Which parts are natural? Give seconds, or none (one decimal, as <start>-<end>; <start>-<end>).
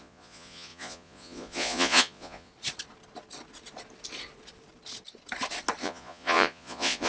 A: 2.5-5.8